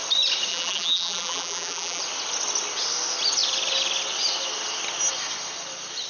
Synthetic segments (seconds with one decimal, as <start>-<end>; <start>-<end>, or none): 0.5-2.0